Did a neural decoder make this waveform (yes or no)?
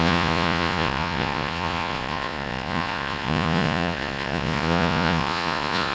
yes